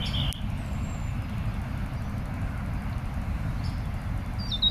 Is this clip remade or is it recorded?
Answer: recorded